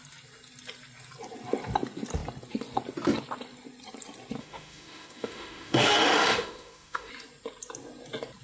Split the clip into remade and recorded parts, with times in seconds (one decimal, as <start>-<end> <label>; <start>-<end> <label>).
0.0-4.4 recorded; 4.4-7.1 remade; 7.1-8.4 recorded